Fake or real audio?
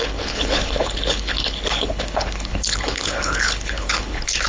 fake